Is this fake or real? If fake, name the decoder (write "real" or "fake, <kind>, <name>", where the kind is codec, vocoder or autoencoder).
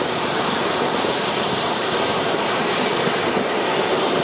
fake, vocoder, BigVGAN v2